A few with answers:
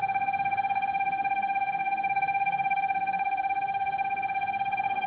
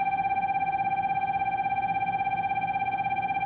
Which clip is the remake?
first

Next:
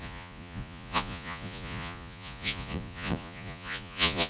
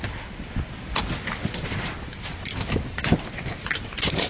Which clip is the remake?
first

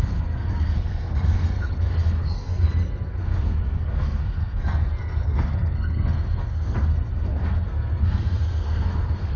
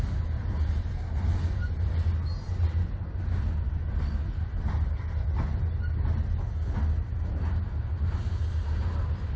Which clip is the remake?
first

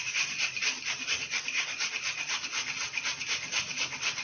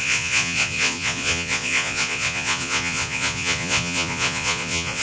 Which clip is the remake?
second